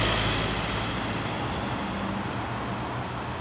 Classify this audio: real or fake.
real